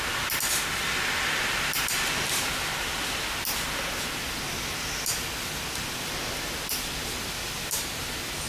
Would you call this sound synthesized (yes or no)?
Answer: no